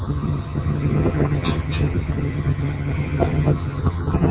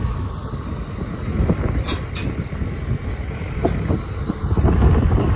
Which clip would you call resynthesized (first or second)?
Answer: first